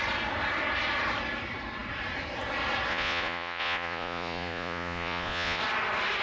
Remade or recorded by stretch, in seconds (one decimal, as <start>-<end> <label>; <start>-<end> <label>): 0.0-2.9 recorded; 2.9-5.6 remade; 5.6-6.2 recorded